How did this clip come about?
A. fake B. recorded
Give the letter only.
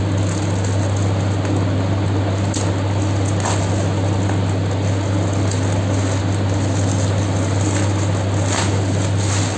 B